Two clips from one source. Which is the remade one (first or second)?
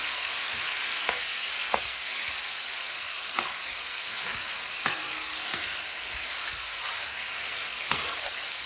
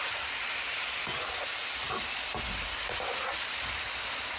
first